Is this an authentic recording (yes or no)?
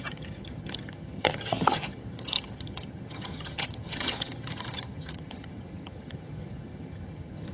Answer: no